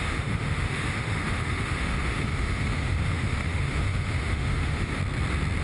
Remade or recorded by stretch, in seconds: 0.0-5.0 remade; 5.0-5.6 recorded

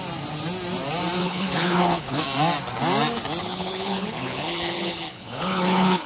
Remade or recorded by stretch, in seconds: 0.0-1.2 recorded; 1.2-2.2 remade; 2.2-3.4 recorded; 3.4-6.1 remade

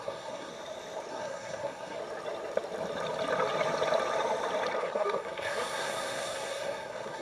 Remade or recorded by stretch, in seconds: 0.0-0.5 remade; 0.5-1.1 recorded; 1.1-2.0 remade; 2.0-4.8 recorded; 4.8-7.2 remade

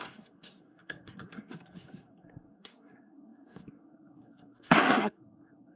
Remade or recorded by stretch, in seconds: 0.0-5.8 remade

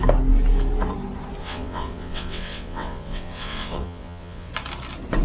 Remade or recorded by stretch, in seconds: 0.0-1.4 recorded; 1.4-4.5 remade; 4.5-5.2 recorded

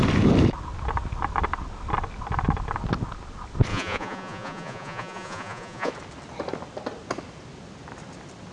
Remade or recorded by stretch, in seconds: 0.0-3.7 recorded; 3.7-5.9 remade; 5.9-8.5 recorded

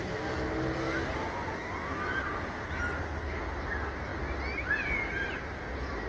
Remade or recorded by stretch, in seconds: 0.0-6.1 recorded